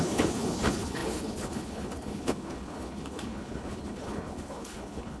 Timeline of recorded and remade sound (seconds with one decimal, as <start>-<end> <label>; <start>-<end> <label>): 0.0-5.2 remade